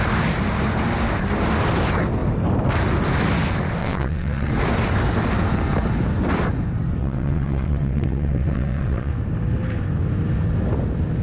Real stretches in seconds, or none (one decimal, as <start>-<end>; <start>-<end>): 0.0-3.8; 4.5-7.0; 9.1-11.2